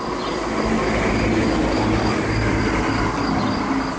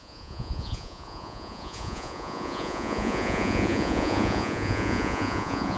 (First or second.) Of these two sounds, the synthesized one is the second